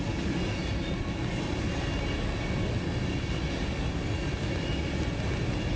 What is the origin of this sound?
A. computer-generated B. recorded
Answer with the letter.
B